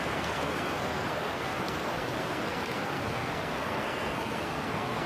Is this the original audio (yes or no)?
no